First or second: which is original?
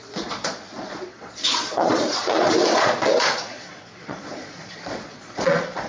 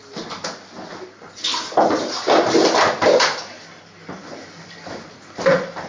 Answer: second